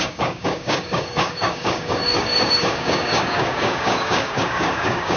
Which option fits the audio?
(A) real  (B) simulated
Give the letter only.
B